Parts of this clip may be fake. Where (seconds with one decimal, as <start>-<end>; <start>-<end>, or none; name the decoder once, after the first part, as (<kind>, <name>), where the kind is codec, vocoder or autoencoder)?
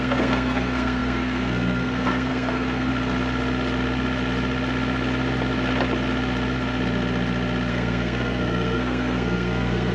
0.0-2.9 (codec, SNAC); 7.7-9.9